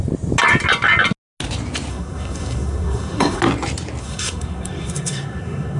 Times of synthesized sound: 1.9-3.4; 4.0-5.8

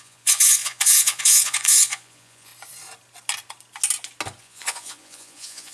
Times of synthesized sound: 0.0-2.5; 4.4-5.7

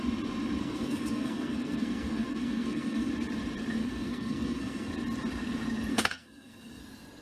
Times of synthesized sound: 0.6-3.1; 3.8-4.9; 5.9-6.8

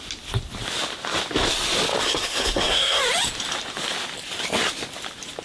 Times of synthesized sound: 2.0-3.0

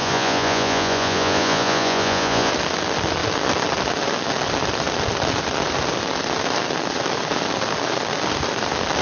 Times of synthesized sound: 0.0-2.5

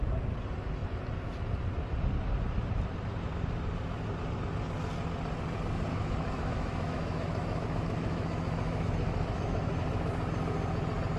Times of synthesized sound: 5.9-9.7

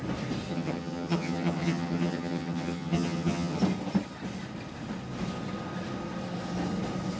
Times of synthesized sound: 0.5-3.6

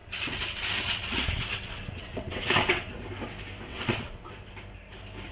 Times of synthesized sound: 0.0-2.9; 3.7-4.3